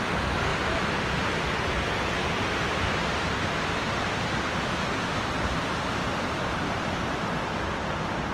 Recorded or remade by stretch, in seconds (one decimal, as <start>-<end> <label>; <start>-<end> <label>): 0.0-8.3 recorded